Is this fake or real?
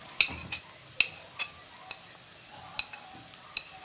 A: real